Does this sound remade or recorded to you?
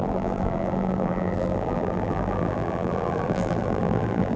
remade